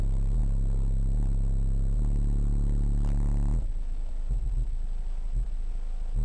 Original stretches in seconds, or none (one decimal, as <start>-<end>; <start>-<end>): 0.0-6.2